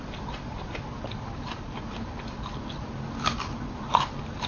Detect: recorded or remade recorded